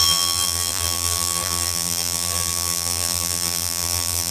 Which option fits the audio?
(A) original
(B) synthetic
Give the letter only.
B